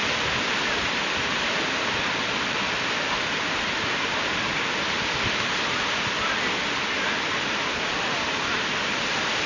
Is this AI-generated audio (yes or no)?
no